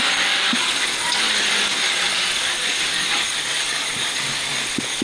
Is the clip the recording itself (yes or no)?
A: no